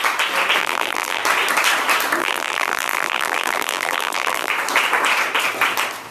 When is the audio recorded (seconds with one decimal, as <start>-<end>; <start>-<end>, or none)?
0.0-0.6; 1.2-2.2; 4.5-6.1